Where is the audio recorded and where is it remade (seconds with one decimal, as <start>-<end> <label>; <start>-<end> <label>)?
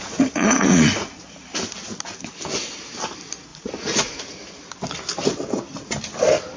0.0-1.2 remade; 1.2-3.5 recorded; 3.5-4.2 remade; 4.2-6.6 recorded